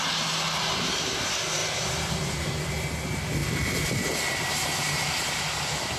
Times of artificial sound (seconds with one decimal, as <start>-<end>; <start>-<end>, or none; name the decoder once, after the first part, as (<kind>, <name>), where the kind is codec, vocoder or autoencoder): 1.6-2.7 (vocoder, BigVGAN v2); 3.4-5.4